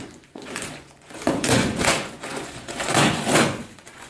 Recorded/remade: remade